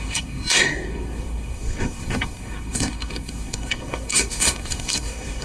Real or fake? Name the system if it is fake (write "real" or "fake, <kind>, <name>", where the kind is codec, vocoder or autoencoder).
fake, codec, SNAC